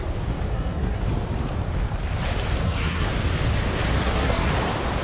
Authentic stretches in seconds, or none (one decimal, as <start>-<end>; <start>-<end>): 0.0-0.5; 1.0-2.6; 3.1-4.0; 4.5-5.0